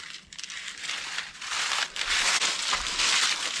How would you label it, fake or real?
real